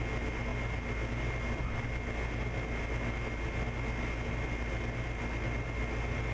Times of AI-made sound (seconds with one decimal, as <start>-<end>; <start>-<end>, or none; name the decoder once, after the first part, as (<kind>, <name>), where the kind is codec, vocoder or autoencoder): none